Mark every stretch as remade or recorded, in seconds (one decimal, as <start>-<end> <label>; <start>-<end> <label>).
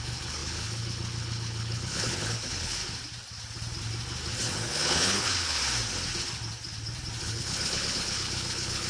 0.0-2.8 remade; 2.8-4.4 recorded; 4.4-5.6 remade; 5.6-7.2 recorded; 7.2-8.9 remade